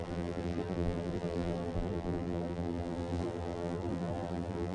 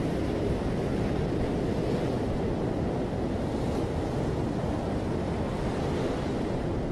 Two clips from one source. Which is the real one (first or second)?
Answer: second